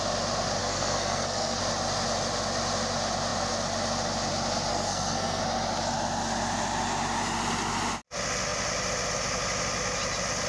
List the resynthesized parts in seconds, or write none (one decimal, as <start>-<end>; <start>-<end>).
0.6-1.6; 4.7-5.4